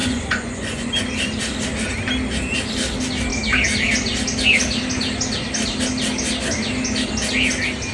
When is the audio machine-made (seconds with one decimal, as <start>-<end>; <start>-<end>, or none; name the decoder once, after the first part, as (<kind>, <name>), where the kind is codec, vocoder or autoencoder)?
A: 0.0-0.9 (vocoder, Vocos)